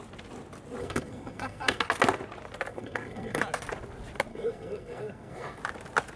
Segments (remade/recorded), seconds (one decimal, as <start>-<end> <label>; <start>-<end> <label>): 0.0-0.8 recorded; 0.8-1.8 remade; 1.8-2.7 recorded; 2.7-3.4 remade; 3.4-4.3 recorded; 4.3-5.6 remade; 5.6-6.2 recorded